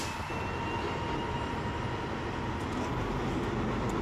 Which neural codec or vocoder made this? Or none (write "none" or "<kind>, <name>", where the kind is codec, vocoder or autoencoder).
none